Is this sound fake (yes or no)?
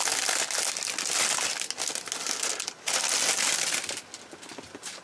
no